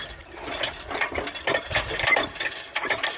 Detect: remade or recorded recorded